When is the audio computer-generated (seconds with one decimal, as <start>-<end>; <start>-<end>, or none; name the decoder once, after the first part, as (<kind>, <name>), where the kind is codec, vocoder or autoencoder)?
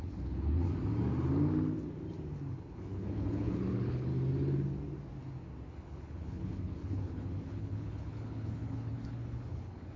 0.0-0.6 (codec, HILCodec); 2.5-4.1; 5.7-10.0